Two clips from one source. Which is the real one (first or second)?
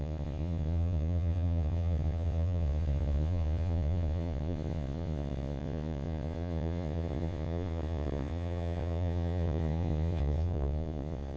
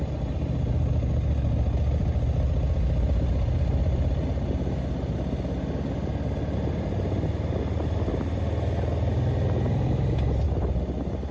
second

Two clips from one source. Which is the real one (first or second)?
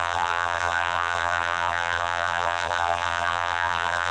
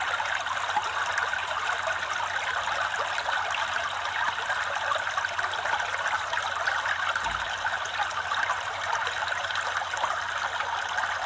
second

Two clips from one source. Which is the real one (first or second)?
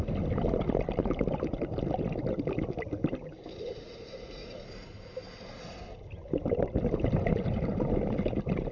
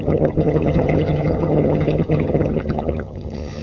first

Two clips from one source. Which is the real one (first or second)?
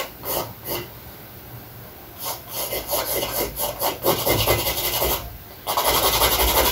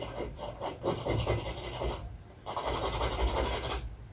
first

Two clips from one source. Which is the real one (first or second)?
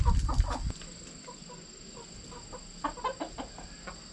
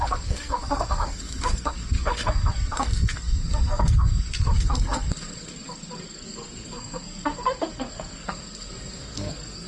first